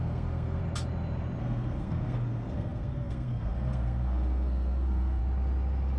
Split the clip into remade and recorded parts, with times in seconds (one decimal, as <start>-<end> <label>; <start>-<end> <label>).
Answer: 0.0-0.6 remade; 0.6-1.4 recorded; 1.4-5.2 remade; 5.2-6.0 recorded